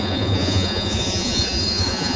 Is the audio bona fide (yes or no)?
no